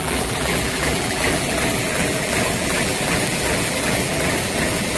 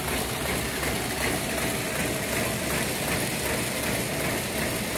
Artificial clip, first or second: first